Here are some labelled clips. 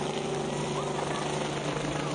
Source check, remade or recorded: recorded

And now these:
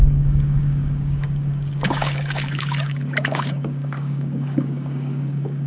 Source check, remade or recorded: remade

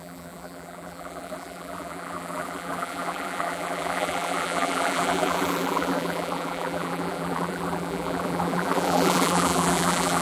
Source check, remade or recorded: remade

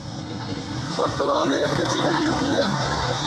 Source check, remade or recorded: remade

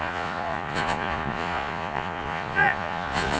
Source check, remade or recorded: remade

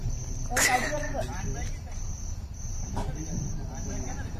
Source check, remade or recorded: remade